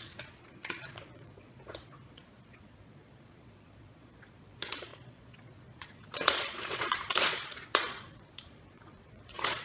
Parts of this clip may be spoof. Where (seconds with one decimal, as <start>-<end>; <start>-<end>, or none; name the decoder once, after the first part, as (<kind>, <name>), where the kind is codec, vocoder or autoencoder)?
0.0-9.6 (vocoder, Vocos)